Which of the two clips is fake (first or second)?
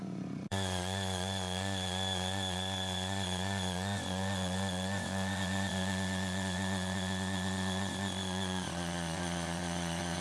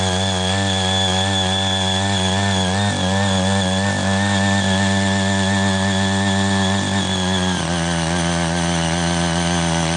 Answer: first